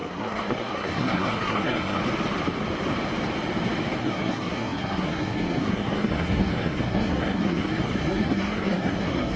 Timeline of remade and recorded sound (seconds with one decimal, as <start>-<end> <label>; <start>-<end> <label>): 0.0-2.0 remade; 2.0-4.0 recorded; 4.0-9.4 remade